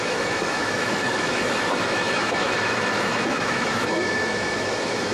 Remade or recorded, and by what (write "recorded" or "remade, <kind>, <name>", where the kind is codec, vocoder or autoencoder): remade, autoencoder, DAC-VAE